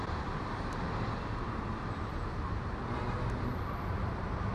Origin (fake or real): fake